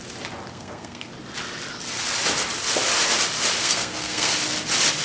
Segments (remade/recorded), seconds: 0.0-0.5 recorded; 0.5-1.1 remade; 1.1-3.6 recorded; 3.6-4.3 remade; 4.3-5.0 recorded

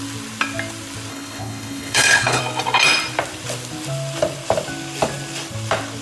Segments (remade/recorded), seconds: 0.0-1.1 recorded; 1.1-2.4 remade; 2.4-6.0 recorded

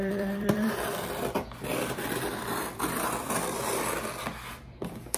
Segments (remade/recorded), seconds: 0.0-5.2 remade

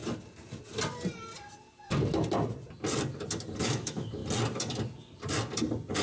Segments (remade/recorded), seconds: 0.0-3.6 recorded; 3.6-4.2 remade; 4.2-6.0 recorded

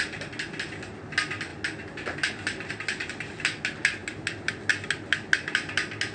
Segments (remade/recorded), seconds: 0.0-6.1 recorded

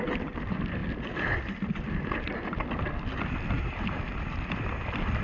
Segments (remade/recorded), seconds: 0.0-5.2 recorded

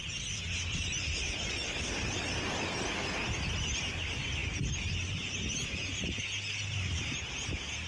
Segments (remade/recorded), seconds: 0.0-7.9 recorded